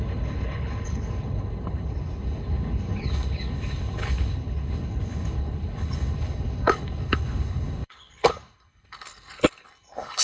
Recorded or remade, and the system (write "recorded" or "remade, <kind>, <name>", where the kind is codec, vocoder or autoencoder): remade, codec, HILCodec